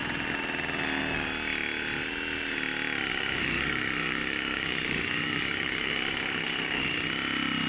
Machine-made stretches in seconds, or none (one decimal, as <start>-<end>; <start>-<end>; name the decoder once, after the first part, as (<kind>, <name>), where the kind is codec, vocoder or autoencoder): 3.1-6.8 (codec, DAC)